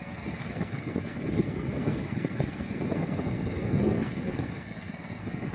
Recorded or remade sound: remade